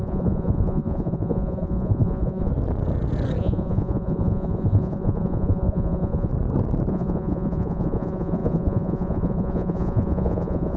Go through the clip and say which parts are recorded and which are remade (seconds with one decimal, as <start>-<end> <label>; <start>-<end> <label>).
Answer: 0.0-2.5 remade; 2.5-3.4 recorded; 3.4-6.3 remade; 6.3-6.9 recorded; 6.9-10.8 remade